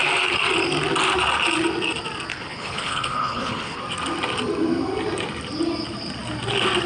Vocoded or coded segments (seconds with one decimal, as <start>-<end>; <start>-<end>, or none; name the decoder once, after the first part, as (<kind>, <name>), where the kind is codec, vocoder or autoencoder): 2.3-3.8 (codec, HILCodec)